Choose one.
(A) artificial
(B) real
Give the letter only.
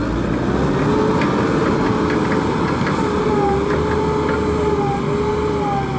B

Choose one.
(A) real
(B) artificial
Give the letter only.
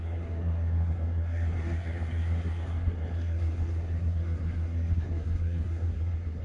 B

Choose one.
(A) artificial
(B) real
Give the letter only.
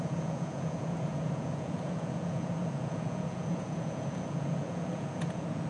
A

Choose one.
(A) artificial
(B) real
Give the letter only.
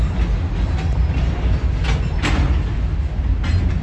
B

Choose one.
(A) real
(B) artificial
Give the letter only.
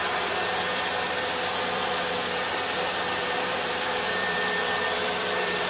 B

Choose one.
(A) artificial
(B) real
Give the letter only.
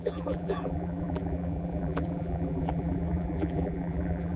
A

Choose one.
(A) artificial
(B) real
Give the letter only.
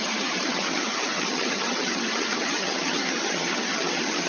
A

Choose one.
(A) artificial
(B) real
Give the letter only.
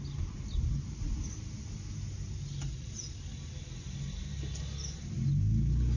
B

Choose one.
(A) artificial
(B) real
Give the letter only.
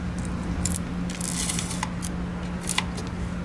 B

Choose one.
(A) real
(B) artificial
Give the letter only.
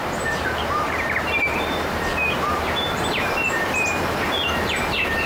B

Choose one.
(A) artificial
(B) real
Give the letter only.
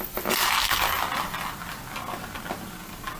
B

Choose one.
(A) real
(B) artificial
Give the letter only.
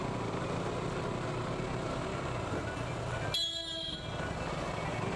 A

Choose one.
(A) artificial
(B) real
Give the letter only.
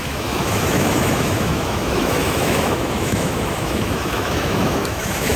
A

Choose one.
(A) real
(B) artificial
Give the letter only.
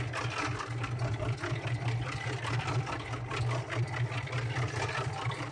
A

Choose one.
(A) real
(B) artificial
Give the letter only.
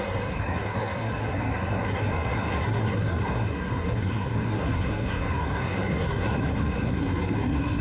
B